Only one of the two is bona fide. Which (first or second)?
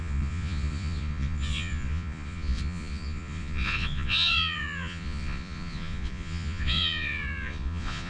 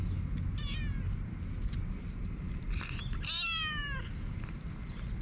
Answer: second